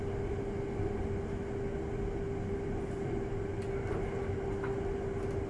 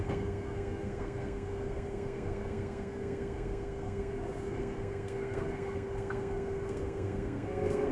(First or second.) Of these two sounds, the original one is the first